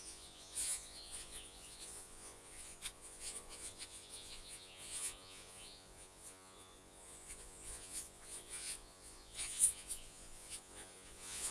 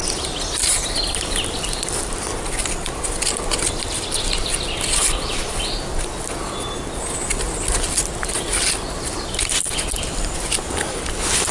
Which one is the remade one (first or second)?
first